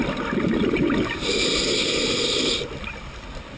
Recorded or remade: recorded